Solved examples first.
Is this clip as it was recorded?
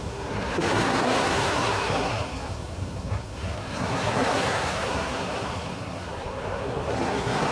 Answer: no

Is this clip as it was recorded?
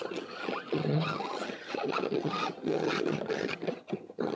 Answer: no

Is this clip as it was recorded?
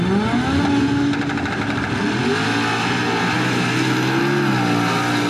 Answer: yes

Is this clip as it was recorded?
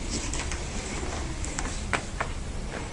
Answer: yes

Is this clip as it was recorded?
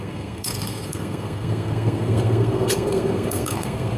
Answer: no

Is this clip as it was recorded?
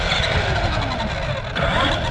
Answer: yes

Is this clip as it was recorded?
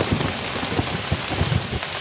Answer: yes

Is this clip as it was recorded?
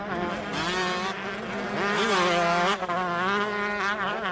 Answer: yes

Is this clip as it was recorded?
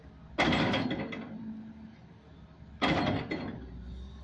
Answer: yes